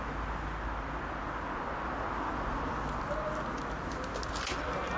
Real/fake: real